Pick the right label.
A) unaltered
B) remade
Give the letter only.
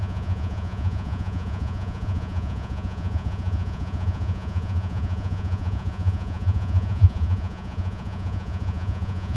B